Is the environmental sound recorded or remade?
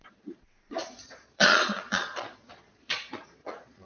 remade